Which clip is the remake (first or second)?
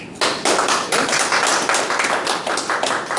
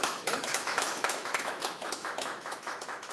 second